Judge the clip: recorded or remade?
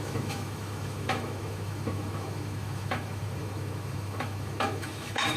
remade